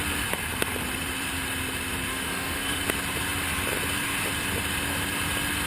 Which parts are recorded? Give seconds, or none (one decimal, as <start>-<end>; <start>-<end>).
0.0-2.1; 2.8-5.7